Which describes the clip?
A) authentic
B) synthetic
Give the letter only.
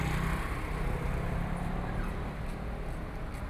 A